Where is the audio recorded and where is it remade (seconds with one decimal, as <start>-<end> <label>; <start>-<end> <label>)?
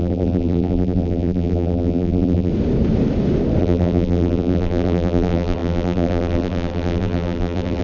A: 0.0-2.5 remade; 2.5-3.6 recorded; 3.6-7.8 remade